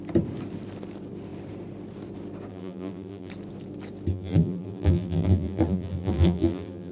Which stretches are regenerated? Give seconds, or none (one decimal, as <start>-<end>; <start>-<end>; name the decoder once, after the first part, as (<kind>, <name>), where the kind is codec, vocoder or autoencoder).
2.5-3.3 (vocoder, BigVGAN v2); 4.1-6.9